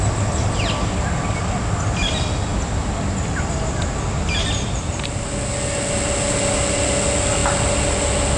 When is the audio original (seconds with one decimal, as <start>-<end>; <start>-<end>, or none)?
0.0-8.4